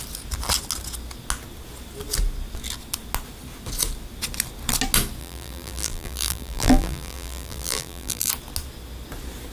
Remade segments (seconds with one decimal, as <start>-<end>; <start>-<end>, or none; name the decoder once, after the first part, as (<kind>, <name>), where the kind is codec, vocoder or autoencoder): 5.2-8.3 (vocoder, BigVGAN v2)